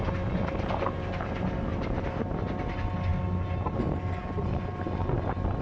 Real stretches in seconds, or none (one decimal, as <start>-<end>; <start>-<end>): 0.0-5.6